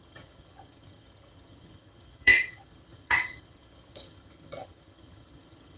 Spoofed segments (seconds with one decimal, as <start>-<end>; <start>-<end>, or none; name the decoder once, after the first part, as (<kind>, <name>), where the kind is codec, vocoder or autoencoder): 0.0-5.8 (vocoder, HiFi-GAN)